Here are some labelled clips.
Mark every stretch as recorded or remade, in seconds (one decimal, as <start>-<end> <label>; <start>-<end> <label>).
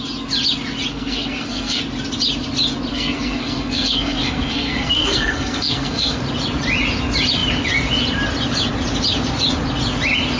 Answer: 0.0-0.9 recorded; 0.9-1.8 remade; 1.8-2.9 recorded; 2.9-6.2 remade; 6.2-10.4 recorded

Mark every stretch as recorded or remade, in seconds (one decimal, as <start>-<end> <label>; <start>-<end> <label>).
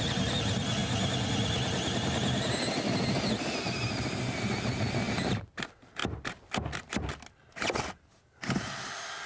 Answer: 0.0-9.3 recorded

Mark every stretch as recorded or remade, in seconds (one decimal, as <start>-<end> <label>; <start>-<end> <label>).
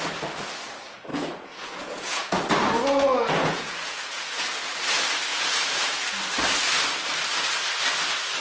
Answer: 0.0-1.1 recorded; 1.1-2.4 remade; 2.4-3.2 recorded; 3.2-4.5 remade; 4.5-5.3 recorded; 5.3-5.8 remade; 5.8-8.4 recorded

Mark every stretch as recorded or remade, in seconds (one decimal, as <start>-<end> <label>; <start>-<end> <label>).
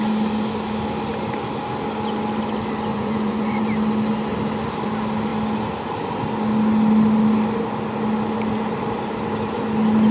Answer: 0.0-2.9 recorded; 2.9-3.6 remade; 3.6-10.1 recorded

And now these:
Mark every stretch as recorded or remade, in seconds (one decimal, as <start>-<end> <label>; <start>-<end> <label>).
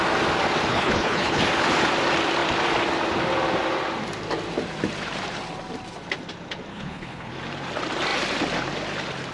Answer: 0.0-0.7 recorded; 0.7-1.4 remade; 1.4-6.7 recorded; 6.7-7.3 remade; 7.3-9.3 recorded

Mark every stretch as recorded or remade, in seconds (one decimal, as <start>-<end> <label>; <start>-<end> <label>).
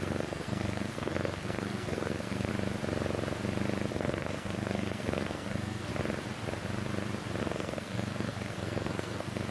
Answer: 0.0-2.5 remade; 2.5-3.9 recorded; 3.9-5.9 remade; 5.9-7.4 recorded; 7.4-9.5 remade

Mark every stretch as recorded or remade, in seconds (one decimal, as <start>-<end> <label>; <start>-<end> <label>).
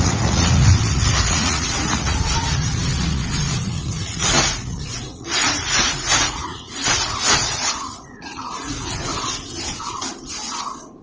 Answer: 0.0-9.1 remade; 9.1-11.0 recorded